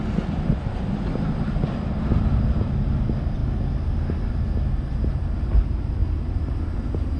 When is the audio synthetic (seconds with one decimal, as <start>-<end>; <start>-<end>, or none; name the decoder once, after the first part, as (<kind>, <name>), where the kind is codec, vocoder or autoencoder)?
none